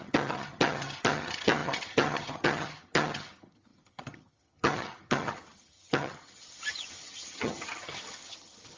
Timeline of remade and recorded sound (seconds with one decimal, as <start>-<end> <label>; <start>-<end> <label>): 0.0-8.8 remade